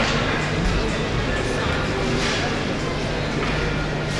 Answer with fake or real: real